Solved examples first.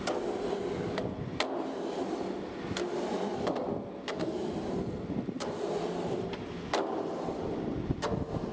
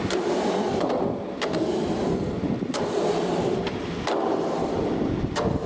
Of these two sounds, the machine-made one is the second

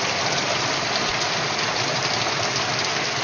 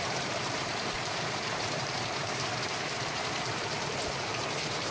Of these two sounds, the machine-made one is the second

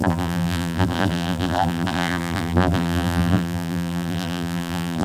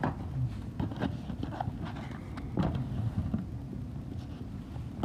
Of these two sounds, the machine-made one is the first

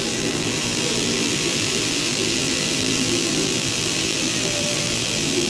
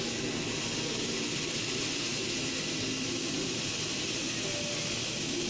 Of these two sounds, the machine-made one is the first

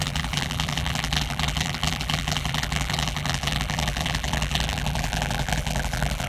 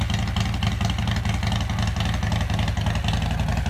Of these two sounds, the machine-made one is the first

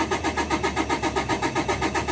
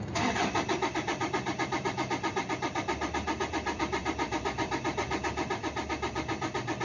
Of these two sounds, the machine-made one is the second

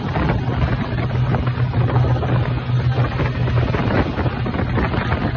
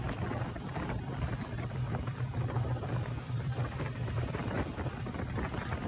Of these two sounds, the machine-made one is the second